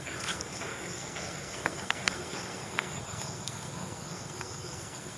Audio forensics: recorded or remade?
remade